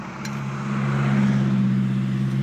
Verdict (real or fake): real